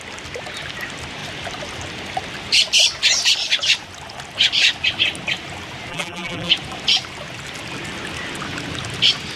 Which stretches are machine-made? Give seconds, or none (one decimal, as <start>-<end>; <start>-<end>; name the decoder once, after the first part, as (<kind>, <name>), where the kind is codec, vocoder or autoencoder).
5.9-6.5 (vocoder, BigVGAN v2)